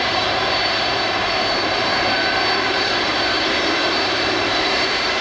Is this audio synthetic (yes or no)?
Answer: yes